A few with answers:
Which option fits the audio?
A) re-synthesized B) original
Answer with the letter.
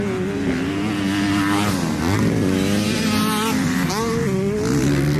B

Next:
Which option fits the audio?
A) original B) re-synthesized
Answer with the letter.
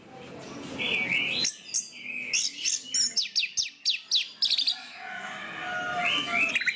A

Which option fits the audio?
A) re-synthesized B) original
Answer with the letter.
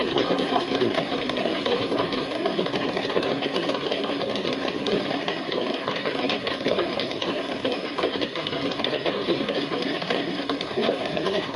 A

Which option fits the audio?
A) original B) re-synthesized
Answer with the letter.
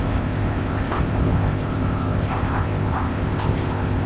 B